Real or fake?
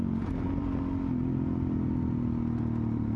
real